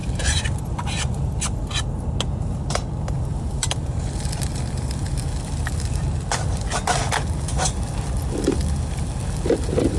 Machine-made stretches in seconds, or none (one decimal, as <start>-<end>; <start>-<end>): 0.0-1.4; 3.3-5.2